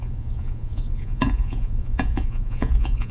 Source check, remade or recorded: remade